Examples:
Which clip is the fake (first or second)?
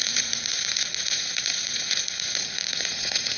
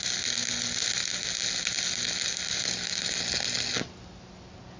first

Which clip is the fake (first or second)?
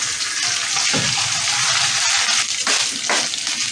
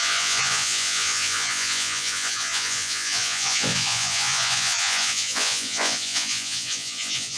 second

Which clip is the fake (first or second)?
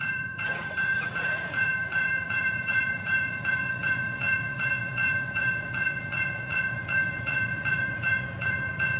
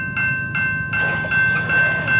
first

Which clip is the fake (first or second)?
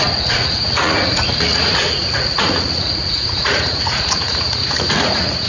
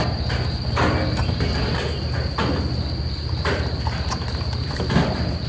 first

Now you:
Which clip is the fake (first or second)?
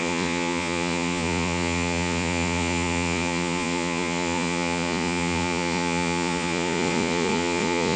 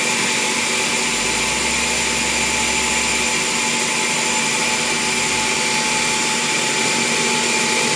first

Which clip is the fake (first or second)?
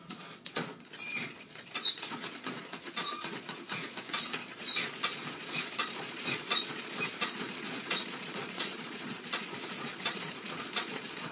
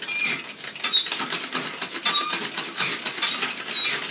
first